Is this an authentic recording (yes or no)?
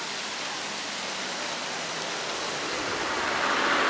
yes